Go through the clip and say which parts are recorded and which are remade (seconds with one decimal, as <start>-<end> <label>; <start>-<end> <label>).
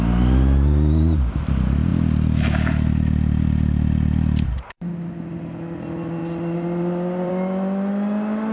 0.0-6.2 recorded; 6.2-7.3 remade; 7.3-8.5 recorded